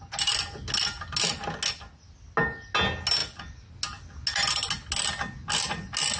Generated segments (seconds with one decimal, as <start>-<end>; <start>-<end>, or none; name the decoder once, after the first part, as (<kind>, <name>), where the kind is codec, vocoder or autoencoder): none